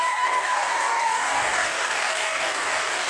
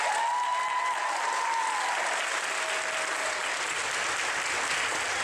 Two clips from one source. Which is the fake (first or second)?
first